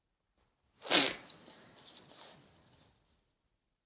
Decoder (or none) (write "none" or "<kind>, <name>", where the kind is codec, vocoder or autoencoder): none